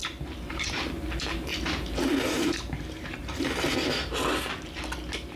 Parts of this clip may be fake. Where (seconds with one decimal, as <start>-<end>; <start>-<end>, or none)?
0.0-0.9; 1.5-3.5